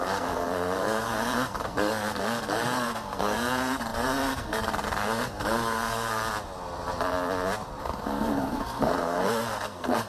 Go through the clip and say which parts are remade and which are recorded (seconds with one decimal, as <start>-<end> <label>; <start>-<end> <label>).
0.0-6.2 remade; 6.2-7.8 recorded; 7.8-10.1 remade